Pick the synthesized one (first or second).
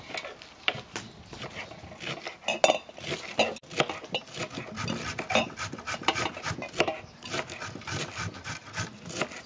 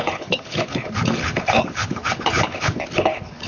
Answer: second